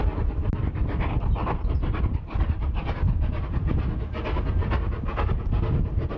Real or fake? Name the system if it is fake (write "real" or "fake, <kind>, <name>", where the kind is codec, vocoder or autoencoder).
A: real